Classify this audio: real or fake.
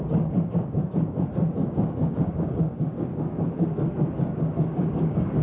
fake